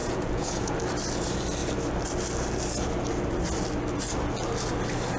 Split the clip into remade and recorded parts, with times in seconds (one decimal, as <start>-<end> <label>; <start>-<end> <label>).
0.0-0.7 remade; 0.7-5.2 recorded